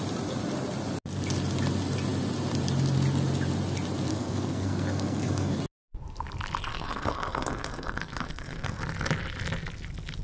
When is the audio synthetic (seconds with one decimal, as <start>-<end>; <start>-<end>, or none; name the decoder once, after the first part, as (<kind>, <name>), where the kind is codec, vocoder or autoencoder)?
4.1-5.6 (codec, SNAC); 6.7-8.8